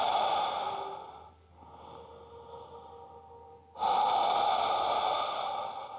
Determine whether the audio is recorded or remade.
recorded